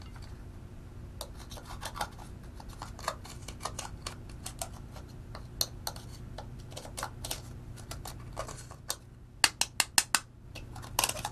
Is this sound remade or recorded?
recorded